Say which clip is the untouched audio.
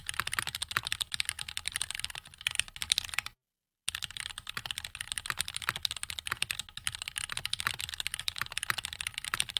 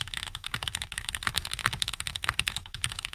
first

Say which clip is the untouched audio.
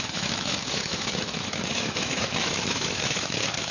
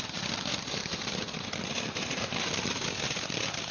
second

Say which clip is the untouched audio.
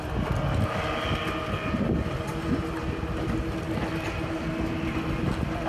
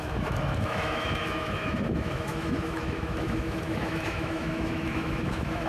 first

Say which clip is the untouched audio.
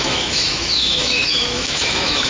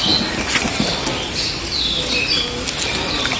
second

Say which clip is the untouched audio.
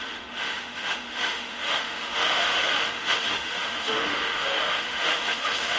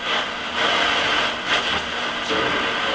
second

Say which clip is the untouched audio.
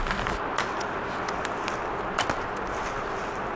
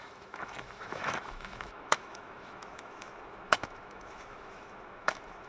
first